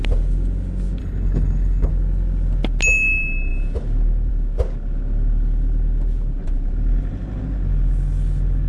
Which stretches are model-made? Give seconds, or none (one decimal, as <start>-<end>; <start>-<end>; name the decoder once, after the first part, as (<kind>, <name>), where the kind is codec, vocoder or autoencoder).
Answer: 1.0-1.9 (codec, HILCodec)